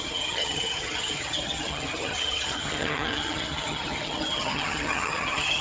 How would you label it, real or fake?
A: fake